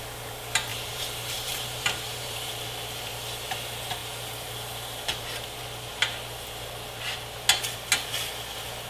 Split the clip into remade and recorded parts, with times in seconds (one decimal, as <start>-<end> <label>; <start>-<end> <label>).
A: 0.0-0.7 recorded; 0.7-2.5 remade; 2.5-8.9 recorded